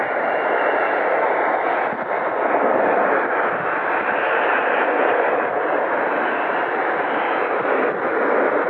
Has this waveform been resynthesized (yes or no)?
no